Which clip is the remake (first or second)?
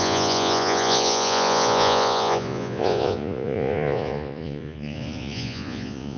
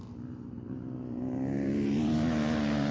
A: first